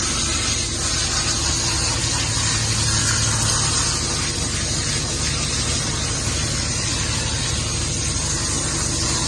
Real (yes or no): yes